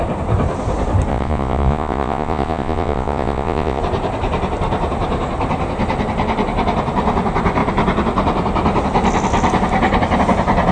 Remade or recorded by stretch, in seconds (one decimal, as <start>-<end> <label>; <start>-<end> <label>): 0.0-1.1 recorded; 1.1-3.8 remade; 3.8-10.7 recorded